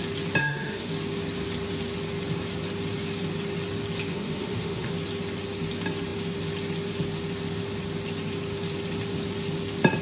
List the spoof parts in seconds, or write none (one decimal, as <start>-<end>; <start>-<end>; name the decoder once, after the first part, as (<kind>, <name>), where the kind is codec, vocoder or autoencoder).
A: 0.4-0.9 (autoencoder, DAC-VAE); 4.1-4.9